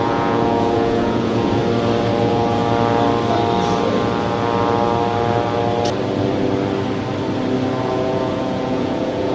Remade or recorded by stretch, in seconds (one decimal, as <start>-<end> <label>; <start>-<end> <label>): 0.0-1.6 remade; 1.6-2.2 recorded; 2.2-2.6 remade; 2.6-7.8 recorded; 7.8-9.3 remade